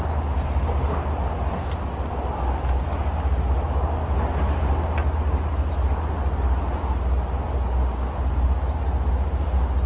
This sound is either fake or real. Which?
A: real